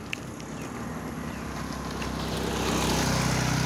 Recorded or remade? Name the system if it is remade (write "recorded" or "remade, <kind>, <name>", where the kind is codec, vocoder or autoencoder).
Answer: recorded